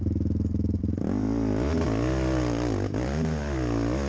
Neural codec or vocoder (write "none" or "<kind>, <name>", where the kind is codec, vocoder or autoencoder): none